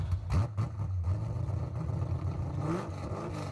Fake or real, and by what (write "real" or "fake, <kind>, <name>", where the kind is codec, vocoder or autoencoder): real